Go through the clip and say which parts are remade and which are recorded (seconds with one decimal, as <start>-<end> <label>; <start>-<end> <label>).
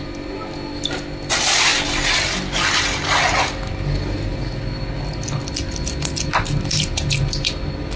0.0-8.0 recorded